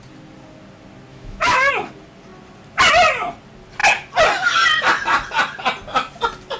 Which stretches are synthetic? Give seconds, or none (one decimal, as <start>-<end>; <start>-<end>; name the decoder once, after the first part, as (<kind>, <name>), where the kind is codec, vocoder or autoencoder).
1.1-1.7 (autoencoder, DAC-VAE)